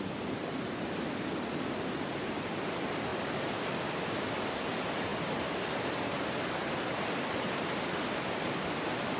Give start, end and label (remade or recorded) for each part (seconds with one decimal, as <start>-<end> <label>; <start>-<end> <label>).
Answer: 0.0-9.2 recorded